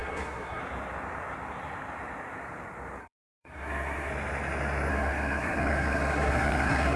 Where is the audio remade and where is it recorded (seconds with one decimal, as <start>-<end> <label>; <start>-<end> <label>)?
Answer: 0.0-0.6 remade; 0.6-3.0 recorded; 3.0-4.1 remade; 4.1-4.9 recorded; 4.9-7.0 remade